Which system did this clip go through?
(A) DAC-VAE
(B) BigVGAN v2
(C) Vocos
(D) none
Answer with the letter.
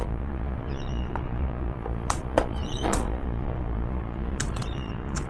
C